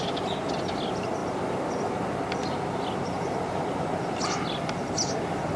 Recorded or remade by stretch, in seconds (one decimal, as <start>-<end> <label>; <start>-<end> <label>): 0.0-5.6 recorded